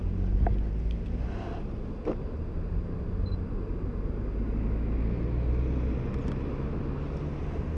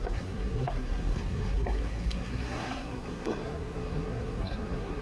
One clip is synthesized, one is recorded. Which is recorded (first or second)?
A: first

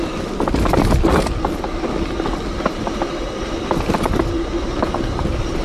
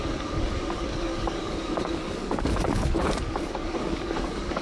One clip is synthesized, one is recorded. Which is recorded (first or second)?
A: first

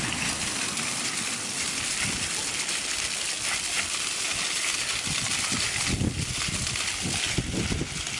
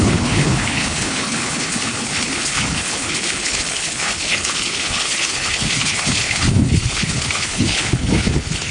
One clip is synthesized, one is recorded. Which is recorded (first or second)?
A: first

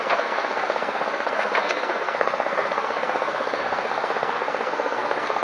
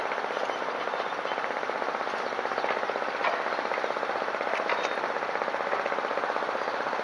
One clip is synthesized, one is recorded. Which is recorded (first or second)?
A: second